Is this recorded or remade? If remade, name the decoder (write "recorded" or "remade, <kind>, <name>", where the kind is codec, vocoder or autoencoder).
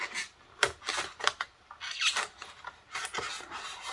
recorded